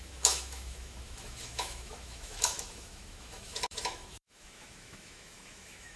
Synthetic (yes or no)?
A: yes